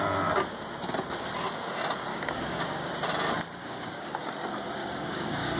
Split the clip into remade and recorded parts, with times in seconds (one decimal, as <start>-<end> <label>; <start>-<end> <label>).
0.0-2.1 recorded; 2.1-2.9 remade; 2.9-3.6 recorded; 3.6-4.3 remade; 4.3-4.8 recorded; 4.8-5.6 remade